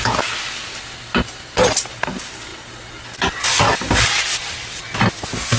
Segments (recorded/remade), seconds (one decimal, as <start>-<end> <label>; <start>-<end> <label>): 0.0-5.6 recorded

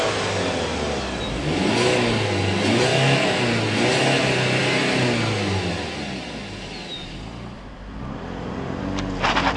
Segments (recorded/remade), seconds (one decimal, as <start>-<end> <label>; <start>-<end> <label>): 0.0-2.9 recorded; 2.9-3.4 remade; 3.4-9.6 recorded

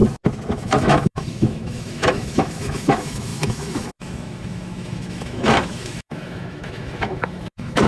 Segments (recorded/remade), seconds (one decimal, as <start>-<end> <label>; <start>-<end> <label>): 0.0-0.5 recorded; 0.5-7.9 remade

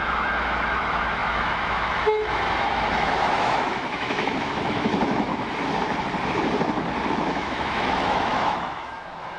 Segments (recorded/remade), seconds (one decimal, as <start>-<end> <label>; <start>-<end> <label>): 0.0-5.3 remade; 5.3-7.1 recorded; 7.1-9.4 remade

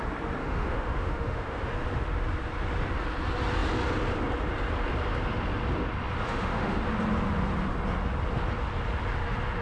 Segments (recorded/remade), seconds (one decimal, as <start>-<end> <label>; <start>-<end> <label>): 0.0-0.4 recorded; 0.4-1.7 remade; 1.7-6.2 recorded; 6.2-6.8 remade; 6.8-9.6 recorded

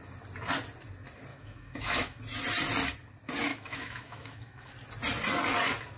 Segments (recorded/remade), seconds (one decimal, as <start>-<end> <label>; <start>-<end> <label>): 0.0-1.3 recorded; 1.3-2.2 remade; 2.2-3.5 recorded; 3.5-4.7 remade; 4.7-6.0 recorded

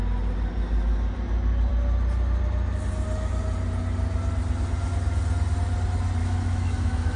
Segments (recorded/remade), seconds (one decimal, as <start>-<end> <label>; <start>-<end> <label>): 0.0-6.2 recorded; 6.2-7.2 remade

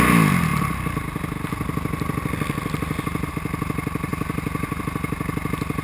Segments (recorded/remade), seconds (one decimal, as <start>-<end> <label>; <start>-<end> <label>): 0.0-5.8 recorded